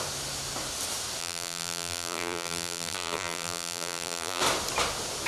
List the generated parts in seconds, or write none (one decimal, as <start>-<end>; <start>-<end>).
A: 1.2-4.4